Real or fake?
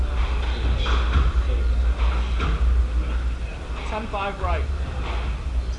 real